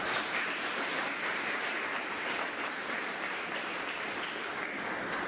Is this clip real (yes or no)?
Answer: yes